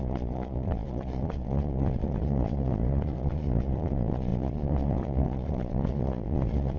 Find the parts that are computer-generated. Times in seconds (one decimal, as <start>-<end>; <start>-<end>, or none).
0.0-6.8